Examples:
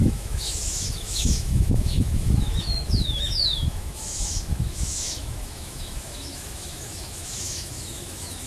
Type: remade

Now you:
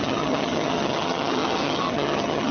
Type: remade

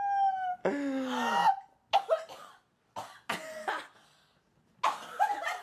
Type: recorded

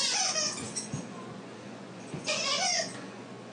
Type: remade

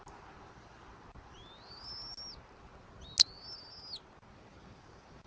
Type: recorded